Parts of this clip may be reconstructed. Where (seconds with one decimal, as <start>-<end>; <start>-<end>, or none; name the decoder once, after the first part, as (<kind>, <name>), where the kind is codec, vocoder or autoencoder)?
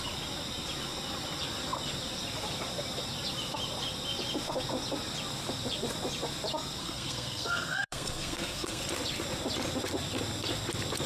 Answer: 6.8-8.8 (codec, SNAC)